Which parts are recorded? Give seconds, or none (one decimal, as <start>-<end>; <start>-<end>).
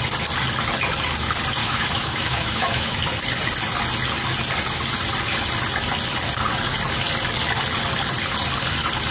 0.0-1.6; 3.0-9.1